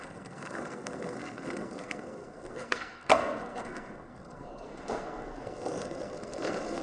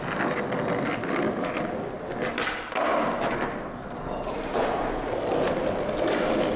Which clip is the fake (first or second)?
first